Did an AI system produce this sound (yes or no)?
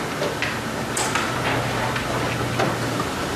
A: no